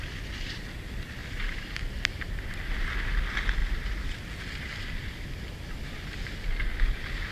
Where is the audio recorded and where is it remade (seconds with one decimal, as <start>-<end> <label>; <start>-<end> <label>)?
0.0-7.3 recorded